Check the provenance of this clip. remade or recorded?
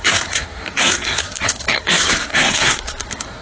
remade